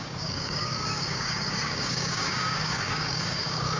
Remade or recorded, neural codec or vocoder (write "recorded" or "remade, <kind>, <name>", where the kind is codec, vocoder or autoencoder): remade, codec, DAC